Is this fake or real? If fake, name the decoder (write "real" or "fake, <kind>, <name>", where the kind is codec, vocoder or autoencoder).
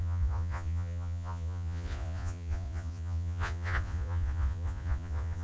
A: fake, vocoder, Vocos